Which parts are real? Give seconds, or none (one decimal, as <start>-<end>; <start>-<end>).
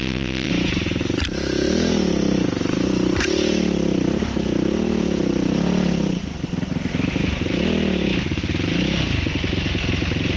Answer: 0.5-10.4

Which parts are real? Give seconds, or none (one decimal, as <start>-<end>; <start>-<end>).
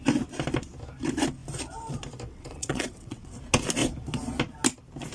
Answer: 0.0-2.3; 3.4-5.1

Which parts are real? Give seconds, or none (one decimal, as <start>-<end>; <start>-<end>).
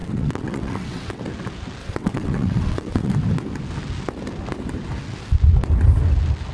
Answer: 1.2-1.8; 3.1-6.5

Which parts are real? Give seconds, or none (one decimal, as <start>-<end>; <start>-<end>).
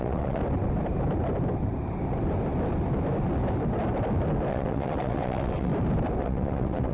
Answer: 0.4-4.5; 5.7-6.2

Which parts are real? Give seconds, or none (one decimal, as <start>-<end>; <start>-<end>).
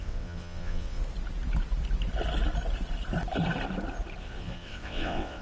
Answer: 1.0-4.2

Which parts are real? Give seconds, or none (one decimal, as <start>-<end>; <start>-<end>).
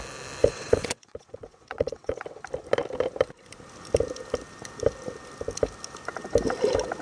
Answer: 0.0-0.4; 2.4-7.0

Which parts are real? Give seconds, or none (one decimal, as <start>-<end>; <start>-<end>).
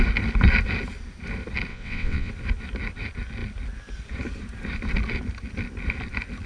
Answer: 0.0-1.7; 2.3-6.5